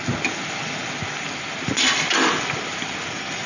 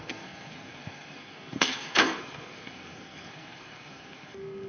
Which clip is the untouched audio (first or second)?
first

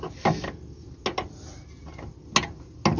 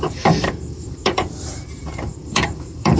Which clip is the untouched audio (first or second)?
first